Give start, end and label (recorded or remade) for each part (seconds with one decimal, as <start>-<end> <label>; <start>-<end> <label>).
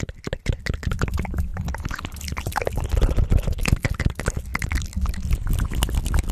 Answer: 0.0-1.5 recorded; 1.5-2.6 remade; 2.6-4.5 recorded; 4.5-5.8 remade; 5.8-6.3 recorded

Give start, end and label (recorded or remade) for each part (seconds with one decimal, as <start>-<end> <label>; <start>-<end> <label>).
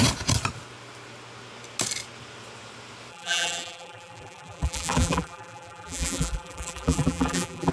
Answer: 0.0-3.1 recorded; 3.1-7.7 remade